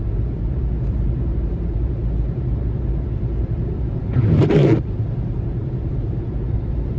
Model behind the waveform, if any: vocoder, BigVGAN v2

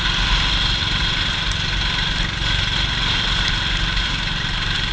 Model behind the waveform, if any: none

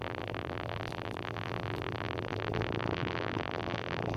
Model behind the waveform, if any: vocoder, BigVGAN v2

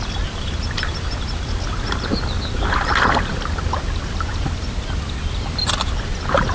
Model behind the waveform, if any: none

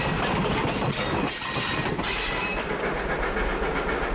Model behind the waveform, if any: none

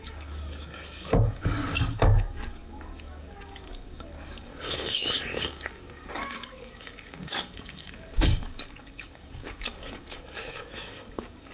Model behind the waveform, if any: codec, DAC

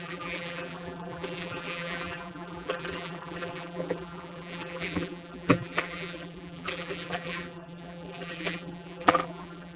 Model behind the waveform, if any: vocoder, BigVGAN v2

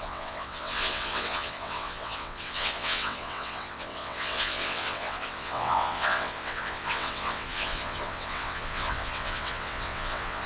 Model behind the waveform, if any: vocoder, WaveNeXt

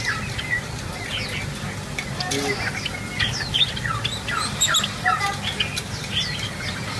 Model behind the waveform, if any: none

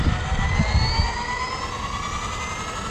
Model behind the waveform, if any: none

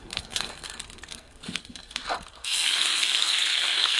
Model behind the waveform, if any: codec, SNAC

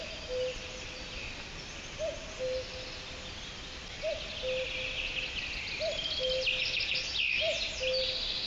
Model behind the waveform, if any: none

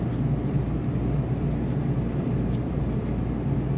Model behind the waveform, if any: none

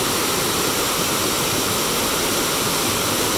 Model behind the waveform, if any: none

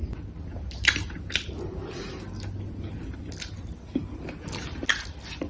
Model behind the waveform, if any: none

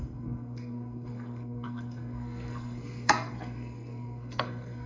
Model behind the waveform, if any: codec, SNAC